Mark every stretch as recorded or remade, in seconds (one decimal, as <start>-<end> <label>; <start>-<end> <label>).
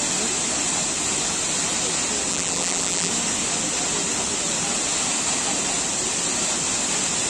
0.0-2.3 recorded; 2.3-3.1 remade; 3.1-7.3 recorded